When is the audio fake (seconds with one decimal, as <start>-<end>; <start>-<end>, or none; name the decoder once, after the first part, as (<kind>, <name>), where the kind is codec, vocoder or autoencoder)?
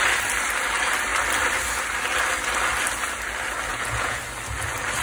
3.7-4.2 (vocoder, Vocos)